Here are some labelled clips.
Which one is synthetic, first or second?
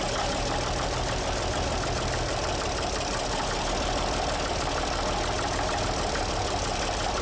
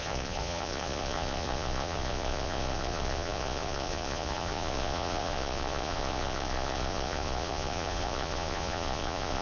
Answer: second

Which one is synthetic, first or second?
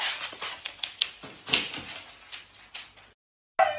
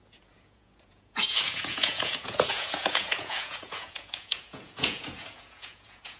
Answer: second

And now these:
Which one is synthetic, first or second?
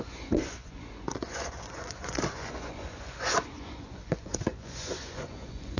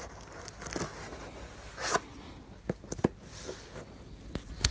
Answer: first